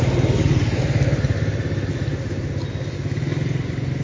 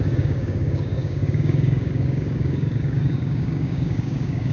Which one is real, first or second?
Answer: first